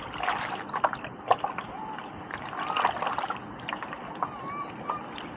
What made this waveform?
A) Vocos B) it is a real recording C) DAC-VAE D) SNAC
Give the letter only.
B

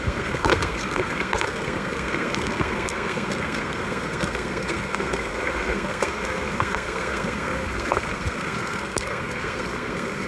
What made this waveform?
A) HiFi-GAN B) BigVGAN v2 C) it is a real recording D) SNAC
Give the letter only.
D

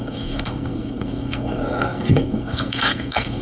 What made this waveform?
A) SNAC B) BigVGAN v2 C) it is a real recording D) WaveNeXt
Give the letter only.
A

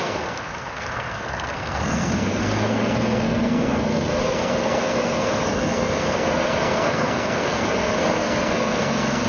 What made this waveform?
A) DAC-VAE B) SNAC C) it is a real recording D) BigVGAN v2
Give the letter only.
B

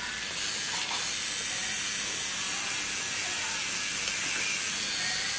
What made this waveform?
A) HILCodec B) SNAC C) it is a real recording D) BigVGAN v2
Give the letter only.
C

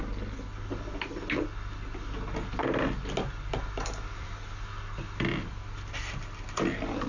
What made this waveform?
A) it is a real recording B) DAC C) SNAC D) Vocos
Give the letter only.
A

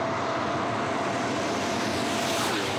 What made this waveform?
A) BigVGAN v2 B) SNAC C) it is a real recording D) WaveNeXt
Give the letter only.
C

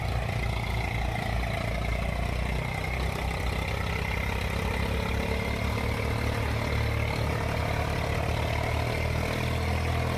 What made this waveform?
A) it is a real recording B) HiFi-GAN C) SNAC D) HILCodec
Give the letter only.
A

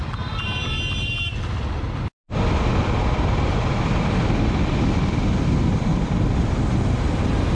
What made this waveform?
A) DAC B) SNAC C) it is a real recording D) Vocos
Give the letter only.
C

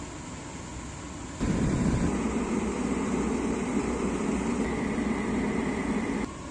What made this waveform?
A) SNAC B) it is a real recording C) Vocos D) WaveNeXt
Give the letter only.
B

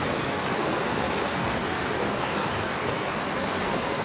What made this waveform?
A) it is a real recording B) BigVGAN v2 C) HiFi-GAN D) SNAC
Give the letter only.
D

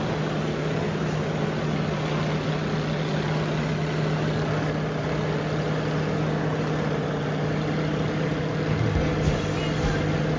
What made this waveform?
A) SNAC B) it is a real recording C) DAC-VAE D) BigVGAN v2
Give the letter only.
B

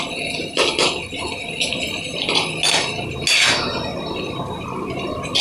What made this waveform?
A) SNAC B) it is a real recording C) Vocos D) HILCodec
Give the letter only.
B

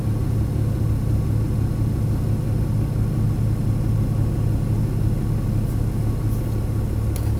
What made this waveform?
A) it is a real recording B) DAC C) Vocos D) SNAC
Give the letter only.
A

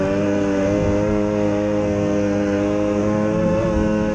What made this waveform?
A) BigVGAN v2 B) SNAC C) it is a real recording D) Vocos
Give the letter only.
B